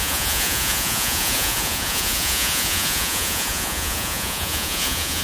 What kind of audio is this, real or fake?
fake